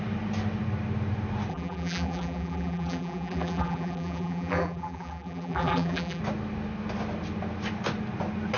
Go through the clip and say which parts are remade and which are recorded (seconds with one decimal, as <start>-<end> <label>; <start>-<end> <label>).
0.0-1.5 recorded; 1.5-6.2 remade; 6.2-8.6 recorded